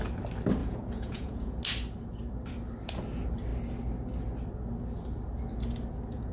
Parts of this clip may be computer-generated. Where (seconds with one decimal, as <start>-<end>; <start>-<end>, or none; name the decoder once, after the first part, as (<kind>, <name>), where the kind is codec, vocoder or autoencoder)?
0.6-1.6 (vocoder, Vocos)